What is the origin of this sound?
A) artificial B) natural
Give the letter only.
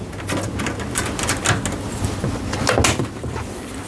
B